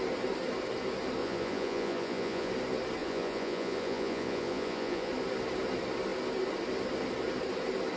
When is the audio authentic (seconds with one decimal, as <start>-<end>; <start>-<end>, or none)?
0.0-1.2; 2.5-3.0; 5.1-8.0